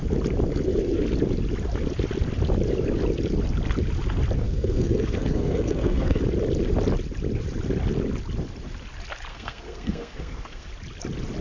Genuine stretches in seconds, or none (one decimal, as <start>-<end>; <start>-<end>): 0.0-4.4; 6.2-9.3; 10.7-11.4